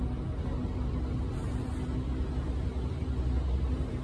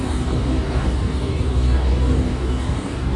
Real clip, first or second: first